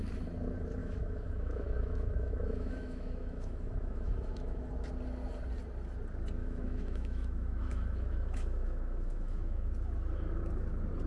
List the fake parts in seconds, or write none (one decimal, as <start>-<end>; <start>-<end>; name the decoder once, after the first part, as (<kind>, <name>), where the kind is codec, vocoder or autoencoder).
0.8-4.6 (autoencoder, DAC-VAE); 6.4-9.7